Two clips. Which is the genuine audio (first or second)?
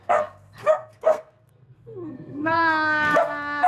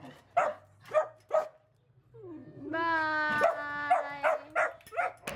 second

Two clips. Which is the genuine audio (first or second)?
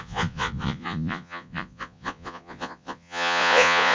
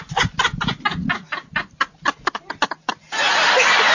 second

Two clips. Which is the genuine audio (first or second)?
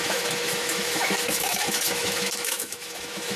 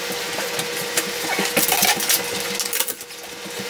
second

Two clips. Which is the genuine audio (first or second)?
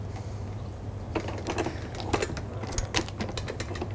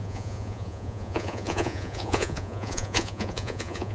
first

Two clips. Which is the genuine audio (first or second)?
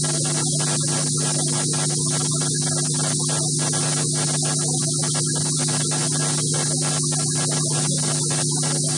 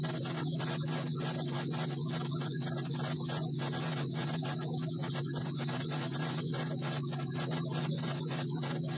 first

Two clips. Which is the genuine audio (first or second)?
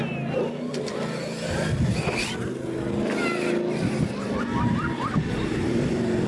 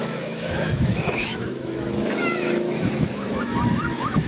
first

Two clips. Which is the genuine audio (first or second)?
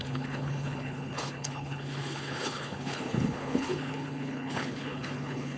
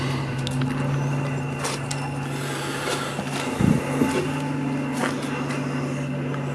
second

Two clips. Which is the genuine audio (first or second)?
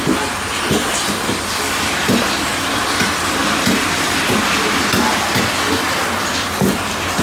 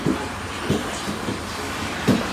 first